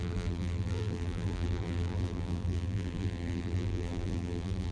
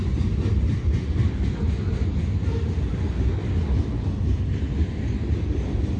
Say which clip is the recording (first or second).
second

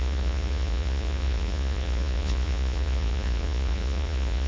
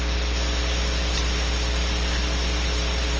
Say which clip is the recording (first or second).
second